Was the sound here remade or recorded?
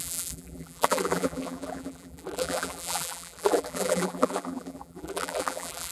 remade